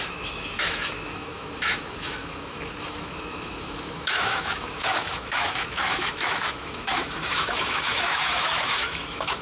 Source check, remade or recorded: remade